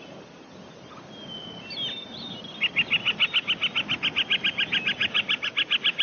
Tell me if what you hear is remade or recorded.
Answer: recorded